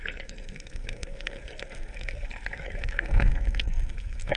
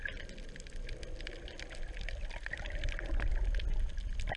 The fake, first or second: first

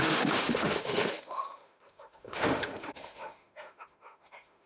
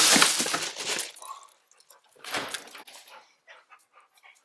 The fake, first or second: first